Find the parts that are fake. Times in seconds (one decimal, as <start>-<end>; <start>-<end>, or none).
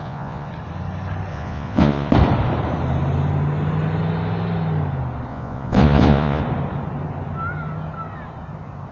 0.0-0.5; 1.3-2.1; 5.3-6.4